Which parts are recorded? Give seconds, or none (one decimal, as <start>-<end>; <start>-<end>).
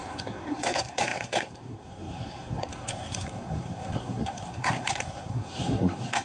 none